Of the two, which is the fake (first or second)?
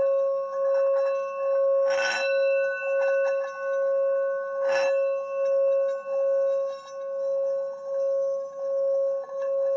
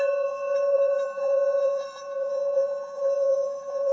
second